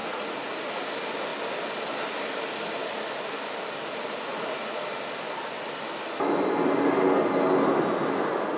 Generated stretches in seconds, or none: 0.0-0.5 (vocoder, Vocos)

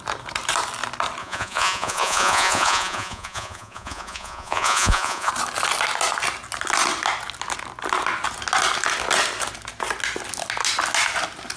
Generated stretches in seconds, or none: 1.2-5.3 (vocoder, Vocos)

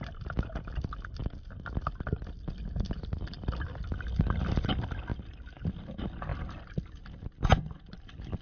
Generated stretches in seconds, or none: none